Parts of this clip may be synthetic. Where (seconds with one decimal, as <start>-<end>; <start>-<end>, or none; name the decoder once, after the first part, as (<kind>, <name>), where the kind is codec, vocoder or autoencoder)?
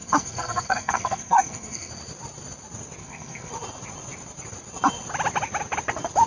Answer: 0.0-1.9 (codec, SNAC); 3.0-3.5